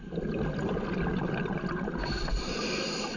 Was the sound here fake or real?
real